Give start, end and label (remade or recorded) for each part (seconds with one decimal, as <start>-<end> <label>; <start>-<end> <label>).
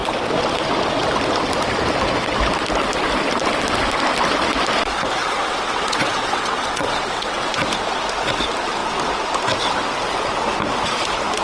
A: 0.0-5.2 recorded; 5.2-7.5 remade; 7.5-11.4 recorded